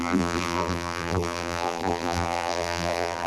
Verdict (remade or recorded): remade